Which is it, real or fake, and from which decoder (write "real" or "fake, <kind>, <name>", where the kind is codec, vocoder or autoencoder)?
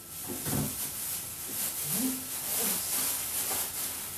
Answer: real